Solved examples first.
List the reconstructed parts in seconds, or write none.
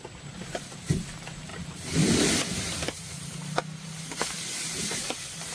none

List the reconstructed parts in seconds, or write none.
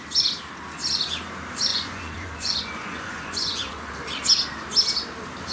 1.7-3.9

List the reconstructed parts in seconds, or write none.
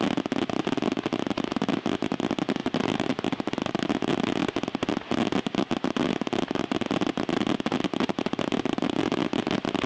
2.6-3.7